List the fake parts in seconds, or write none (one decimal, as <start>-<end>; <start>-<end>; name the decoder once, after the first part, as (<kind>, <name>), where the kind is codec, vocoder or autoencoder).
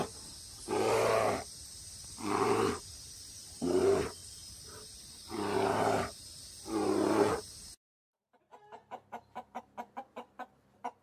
0.0-2.8 (vocoder, BigVGAN v2)